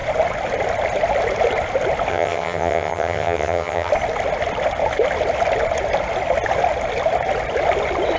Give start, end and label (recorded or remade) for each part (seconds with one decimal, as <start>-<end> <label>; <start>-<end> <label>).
0.0-2.1 recorded; 2.1-3.9 remade; 3.9-8.2 recorded

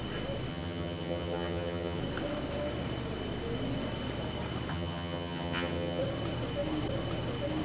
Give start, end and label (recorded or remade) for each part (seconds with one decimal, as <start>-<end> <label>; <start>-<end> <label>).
0.0-0.5 recorded; 0.5-2.0 remade; 2.0-4.7 recorded; 4.7-6.0 remade; 6.0-7.6 recorded

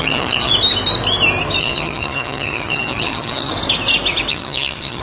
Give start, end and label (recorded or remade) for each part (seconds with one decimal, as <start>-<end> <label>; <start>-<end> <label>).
0.0-0.5 remade; 0.5-1.6 recorded; 1.6-3.5 remade; 3.5-4.3 recorded; 4.3-5.0 remade

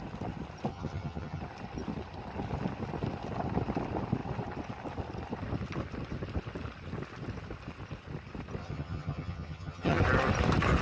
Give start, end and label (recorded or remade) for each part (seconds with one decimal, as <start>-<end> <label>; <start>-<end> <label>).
0.0-0.7 recorded; 0.7-1.4 remade; 1.4-8.6 recorded; 8.6-10.0 remade; 10.0-10.8 recorded

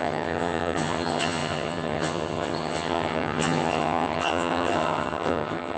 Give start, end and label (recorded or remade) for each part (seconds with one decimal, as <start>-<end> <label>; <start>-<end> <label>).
0.0-5.8 remade

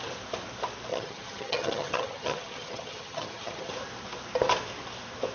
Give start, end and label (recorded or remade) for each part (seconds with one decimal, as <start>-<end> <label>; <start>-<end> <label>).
0.0-0.9 recorded; 0.9-3.7 remade; 3.7-5.3 recorded